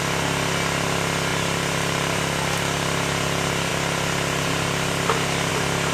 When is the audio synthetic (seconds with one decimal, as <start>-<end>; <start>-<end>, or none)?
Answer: 1.3-2.2; 3.7-5.5